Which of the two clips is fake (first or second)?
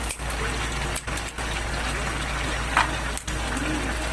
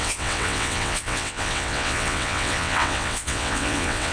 second